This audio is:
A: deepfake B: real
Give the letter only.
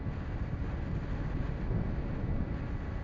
B